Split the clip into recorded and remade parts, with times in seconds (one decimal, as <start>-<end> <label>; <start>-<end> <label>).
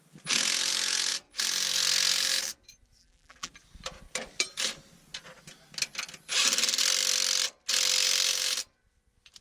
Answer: 0.0-3.0 recorded; 3.0-3.5 remade; 3.5-9.4 recorded